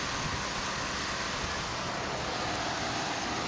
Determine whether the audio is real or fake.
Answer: real